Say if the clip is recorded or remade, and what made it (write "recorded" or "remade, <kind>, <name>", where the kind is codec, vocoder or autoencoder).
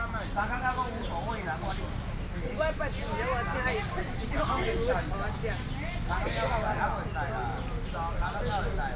recorded